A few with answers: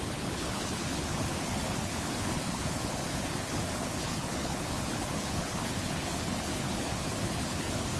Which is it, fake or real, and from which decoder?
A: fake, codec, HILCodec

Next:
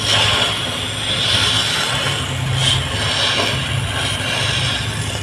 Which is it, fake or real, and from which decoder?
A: real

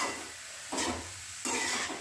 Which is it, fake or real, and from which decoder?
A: real